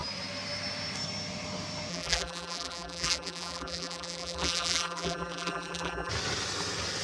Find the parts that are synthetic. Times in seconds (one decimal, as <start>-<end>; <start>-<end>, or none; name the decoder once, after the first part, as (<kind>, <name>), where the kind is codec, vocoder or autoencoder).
1.9-6.1 (vocoder, BigVGAN v2)

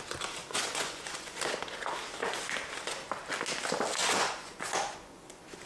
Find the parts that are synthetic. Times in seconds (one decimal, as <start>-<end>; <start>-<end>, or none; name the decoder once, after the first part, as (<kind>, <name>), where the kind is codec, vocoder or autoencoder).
0.4-1.4 (vocoder, Vocos); 4.0-5.2

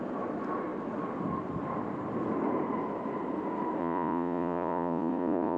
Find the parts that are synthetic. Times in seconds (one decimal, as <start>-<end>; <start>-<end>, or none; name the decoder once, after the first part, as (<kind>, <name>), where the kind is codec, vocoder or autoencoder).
3.8-5.6 (vocoder, Vocos)

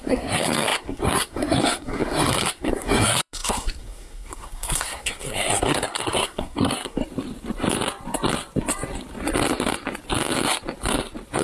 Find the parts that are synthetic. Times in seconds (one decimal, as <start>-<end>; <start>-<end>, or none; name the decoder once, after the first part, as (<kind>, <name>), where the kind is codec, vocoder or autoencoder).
0.0-7.0 (codec, SNAC)

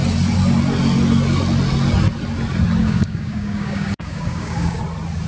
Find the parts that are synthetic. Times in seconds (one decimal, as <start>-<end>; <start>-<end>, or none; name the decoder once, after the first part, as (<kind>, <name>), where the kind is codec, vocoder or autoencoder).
2.8-4.8 (codec, DAC)

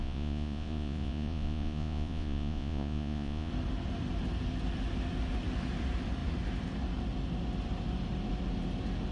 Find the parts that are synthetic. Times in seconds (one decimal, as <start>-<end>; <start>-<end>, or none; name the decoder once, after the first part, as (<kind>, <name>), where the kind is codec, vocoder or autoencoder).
0.0-3.5 (vocoder, Vocos)

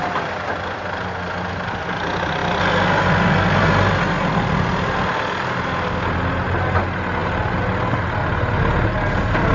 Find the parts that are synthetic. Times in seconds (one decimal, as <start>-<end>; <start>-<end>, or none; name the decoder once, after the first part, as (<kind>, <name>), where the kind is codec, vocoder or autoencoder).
none